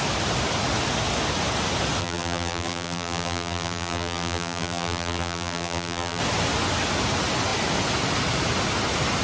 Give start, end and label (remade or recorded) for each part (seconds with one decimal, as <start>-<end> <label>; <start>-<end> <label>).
0.0-2.0 recorded; 2.0-6.2 remade; 6.2-9.2 recorded